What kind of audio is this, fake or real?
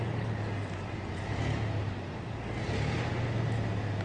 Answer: real